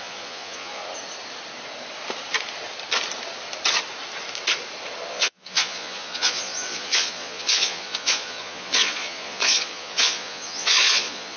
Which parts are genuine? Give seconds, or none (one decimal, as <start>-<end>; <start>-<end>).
0.8-5.1